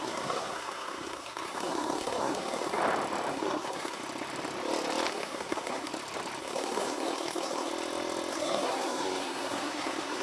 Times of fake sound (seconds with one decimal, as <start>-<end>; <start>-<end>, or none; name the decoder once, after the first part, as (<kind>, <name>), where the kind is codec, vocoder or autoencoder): 0.0-2.8 (codec, SNAC); 3.3-4.0; 5.1-5.9; 6.4-7.7; 8.3-10.2